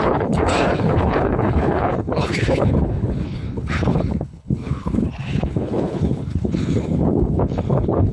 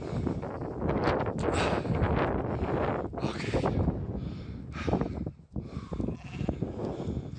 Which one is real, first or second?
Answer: second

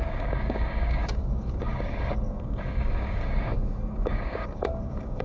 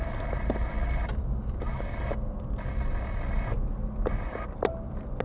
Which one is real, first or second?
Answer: second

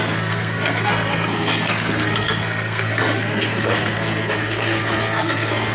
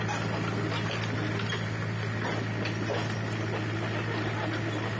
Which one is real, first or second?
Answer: second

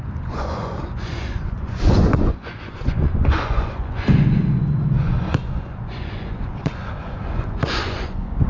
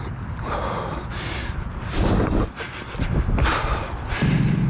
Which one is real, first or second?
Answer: second